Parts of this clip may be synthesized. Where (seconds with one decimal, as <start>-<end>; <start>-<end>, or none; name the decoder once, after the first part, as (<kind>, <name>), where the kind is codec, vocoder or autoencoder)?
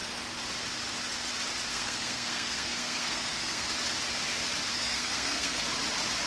1.7-3.7 (codec, SNAC); 4.7-5.6